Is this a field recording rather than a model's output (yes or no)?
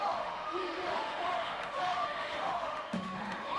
no